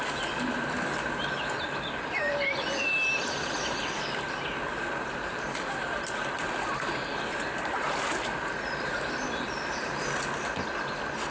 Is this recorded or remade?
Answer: recorded